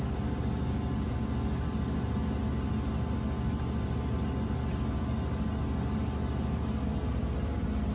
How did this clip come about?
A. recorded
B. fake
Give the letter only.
A